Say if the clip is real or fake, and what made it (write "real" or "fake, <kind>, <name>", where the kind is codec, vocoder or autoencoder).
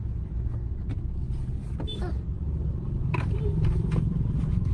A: real